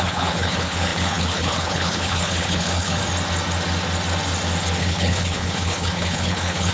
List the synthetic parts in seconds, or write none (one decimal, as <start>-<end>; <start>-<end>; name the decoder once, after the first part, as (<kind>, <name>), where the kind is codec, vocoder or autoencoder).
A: 0.0-3.0 (codec, HILCodec); 4.8-6.7